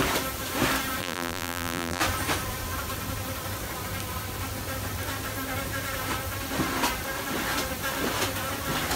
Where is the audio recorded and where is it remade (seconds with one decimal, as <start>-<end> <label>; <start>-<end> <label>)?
0.0-1.0 recorded; 1.0-2.0 remade; 2.0-9.0 recorded